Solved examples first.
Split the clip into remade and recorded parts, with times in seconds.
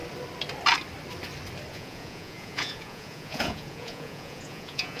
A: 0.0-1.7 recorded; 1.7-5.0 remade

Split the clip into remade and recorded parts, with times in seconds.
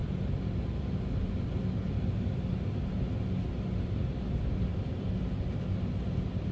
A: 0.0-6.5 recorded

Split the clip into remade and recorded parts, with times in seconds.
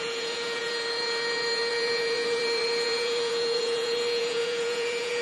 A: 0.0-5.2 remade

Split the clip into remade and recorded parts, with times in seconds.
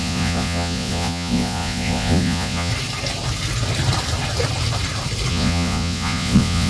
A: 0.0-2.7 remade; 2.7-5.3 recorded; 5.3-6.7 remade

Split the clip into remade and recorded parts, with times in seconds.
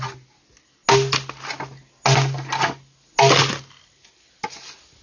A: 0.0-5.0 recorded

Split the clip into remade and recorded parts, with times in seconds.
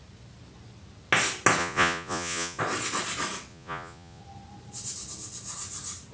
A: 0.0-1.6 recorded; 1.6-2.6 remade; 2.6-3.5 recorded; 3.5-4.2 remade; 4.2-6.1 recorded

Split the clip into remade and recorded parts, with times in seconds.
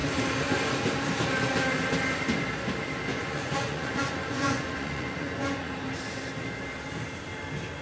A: 0.0-3.1 recorded; 3.1-5.7 remade; 5.7-7.8 recorded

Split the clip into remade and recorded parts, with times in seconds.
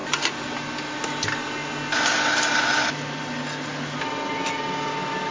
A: 0.0-5.3 recorded